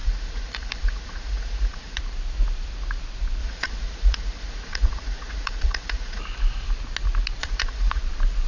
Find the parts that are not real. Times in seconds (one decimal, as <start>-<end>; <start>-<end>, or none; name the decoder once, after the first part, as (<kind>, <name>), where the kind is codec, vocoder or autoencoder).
0.0-2.0 (vocoder, Vocos); 3.4-6.2; 7.4-8.0